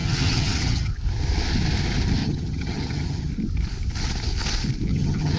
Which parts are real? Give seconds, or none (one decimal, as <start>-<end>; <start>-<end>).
0.9-2.2; 3.3-4.9